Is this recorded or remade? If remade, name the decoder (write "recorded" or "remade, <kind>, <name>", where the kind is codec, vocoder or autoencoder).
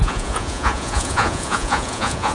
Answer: remade, vocoder, Vocos